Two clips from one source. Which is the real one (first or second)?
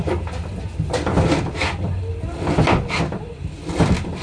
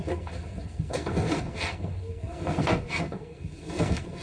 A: first